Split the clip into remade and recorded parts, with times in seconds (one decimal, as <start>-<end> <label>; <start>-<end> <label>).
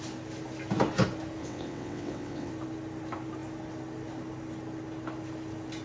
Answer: 0.0-1.4 recorded; 1.4-2.5 remade; 2.5-5.8 recorded